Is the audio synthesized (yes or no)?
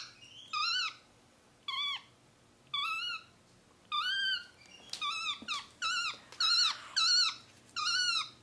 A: no